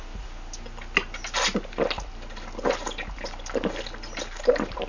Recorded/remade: recorded